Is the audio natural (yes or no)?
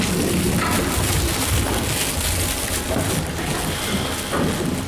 yes